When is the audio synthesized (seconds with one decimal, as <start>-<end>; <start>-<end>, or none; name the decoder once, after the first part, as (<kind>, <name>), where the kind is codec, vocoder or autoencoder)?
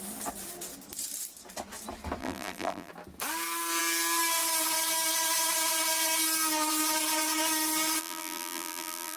2.2-2.9 (vocoder, BigVGAN v2); 8.0-9.2